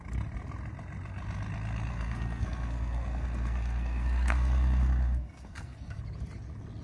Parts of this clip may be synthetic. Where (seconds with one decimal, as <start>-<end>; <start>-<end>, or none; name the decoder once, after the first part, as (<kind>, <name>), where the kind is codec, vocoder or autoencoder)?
1.9-6.0 (codec, SNAC)